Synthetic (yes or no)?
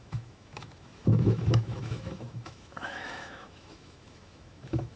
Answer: yes